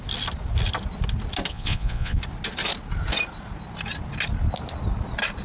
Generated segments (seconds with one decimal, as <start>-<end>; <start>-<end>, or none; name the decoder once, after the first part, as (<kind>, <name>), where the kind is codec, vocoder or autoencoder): 1.5-2.2 (vocoder, Vocos)